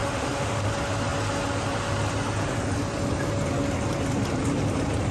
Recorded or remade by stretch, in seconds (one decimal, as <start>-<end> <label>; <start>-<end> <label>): 0.0-0.7 remade; 0.7-5.1 recorded